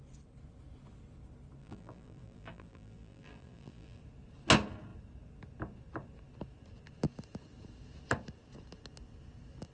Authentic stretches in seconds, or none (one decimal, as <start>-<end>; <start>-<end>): 0.0-1.6; 4.0-9.7